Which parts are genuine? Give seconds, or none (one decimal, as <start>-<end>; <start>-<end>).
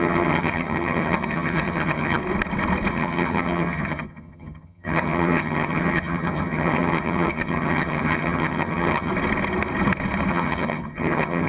2.2-2.9; 9.1-10.3